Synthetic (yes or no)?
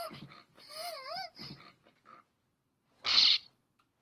no